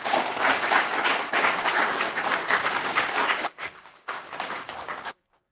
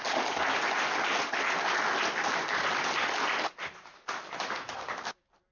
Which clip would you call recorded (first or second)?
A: second